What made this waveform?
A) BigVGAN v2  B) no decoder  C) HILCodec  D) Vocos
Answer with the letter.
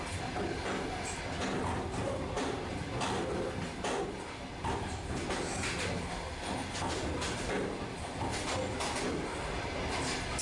B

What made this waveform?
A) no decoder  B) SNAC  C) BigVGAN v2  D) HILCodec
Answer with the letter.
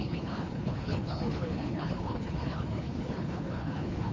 D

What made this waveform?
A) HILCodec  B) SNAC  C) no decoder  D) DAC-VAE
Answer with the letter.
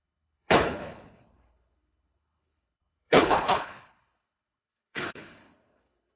A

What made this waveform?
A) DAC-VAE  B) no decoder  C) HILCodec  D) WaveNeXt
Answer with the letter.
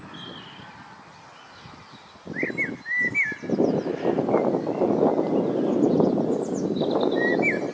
B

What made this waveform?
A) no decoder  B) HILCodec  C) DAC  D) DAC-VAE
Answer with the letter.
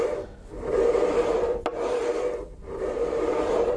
A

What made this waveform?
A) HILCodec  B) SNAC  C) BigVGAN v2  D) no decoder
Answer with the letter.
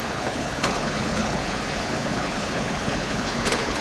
A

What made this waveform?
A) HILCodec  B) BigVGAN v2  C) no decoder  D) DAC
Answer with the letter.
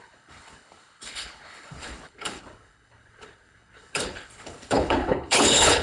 A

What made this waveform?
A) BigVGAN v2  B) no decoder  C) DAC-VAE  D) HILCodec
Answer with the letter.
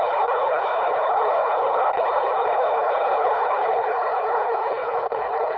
D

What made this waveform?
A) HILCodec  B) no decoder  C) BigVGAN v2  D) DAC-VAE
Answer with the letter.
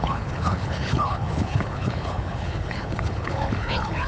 A